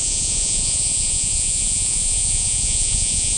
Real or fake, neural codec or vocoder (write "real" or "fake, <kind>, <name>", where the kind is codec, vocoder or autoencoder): fake, vocoder, Vocos